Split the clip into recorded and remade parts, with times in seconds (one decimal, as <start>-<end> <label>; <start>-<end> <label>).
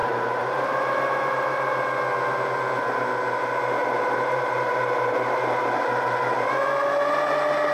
0.0-1.8 remade; 1.8-3.8 recorded; 3.8-6.5 remade; 6.5-7.7 recorded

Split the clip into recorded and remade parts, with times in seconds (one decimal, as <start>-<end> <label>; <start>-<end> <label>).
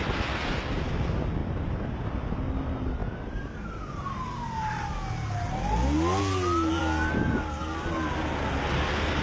0.0-1.4 recorded; 1.4-2.0 remade; 2.0-3.0 recorded; 3.0-4.9 remade; 4.9-9.2 recorded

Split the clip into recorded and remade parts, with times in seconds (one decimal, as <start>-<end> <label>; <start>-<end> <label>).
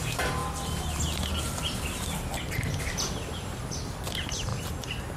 0.0-0.4 remade; 0.4-2.8 recorded; 2.8-3.6 remade; 3.6-4.1 recorded; 4.1-5.2 remade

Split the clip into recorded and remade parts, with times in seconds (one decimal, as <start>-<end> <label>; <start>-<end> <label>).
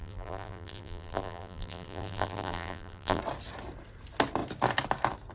0.0-3.2 remade; 3.2-5.3 recorded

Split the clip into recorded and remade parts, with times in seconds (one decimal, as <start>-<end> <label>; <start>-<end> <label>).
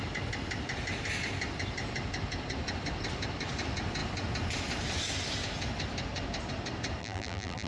0.0-7.0 recorded; 7.0-7.7 remade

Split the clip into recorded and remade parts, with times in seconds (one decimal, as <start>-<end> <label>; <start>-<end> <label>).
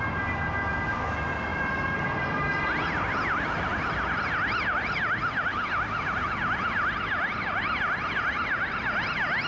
0.0-1.5 recorded; 1.5-3.3 remade; 3.3-9.5 recorded